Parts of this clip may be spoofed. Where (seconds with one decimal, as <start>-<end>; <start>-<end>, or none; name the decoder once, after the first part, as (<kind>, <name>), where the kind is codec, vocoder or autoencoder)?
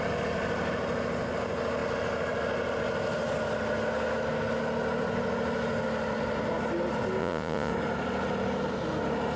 7.2-7.7 (vocoder, Vocos)